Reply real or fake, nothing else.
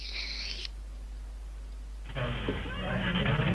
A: real